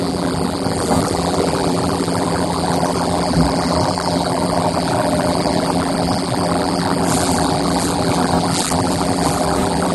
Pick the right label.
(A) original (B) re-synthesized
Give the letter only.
B